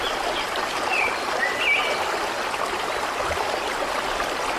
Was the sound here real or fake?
real